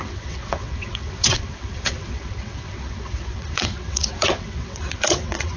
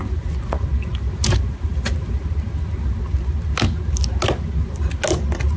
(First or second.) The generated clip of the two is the first